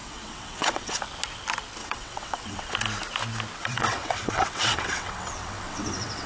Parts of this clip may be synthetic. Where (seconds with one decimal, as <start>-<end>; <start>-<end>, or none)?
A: 0.0-1.0; 1.8-2.7; 3.6-6.3